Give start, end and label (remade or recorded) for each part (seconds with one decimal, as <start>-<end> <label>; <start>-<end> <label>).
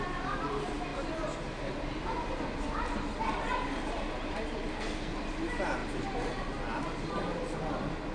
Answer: 0.0-4.7 recorded; 4.7-5.2 remade; 5.2-8.1 recorded